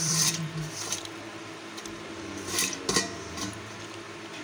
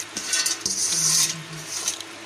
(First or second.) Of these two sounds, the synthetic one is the first